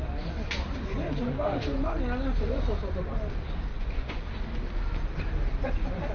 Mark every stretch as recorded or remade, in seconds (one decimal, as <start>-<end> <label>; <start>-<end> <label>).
0.0-3.7 recorded; 3.7-4.2 remade; 4.2-6.1 recorded